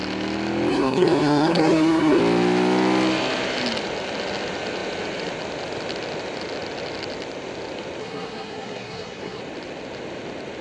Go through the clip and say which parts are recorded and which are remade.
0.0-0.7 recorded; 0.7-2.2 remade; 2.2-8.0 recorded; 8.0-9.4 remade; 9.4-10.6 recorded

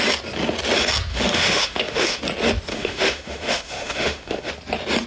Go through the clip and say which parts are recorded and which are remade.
0.0-1.1 recorded; 1.1-2.2 remade; 2.2-2.7 recorded; 2.7-4.5 remade; 4.5-5.1 recorded

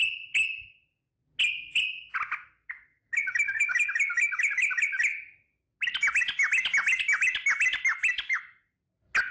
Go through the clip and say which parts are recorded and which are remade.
0.0-9.3 recorded

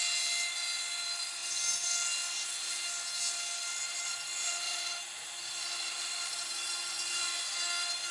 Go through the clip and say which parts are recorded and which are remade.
0.0-6.8 recorded; 6.8-7.4 remade; 7.4-8.1 recorded

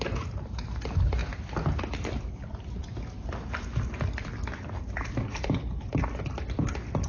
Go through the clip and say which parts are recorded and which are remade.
0.0-7.1 recorded

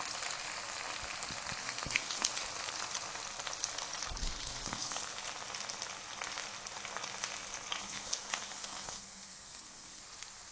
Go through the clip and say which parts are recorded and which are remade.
0.0-1.6 recorded; 1.6-2.3 remade; 2.3-4.2 recorded; 4.2-5.0 remade; 5.0-7.8 recorded; 7.8-10.0 remade; 10.0-10.5 recorded